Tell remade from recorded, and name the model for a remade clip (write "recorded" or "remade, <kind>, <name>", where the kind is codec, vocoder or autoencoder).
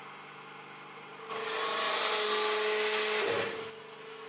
recorded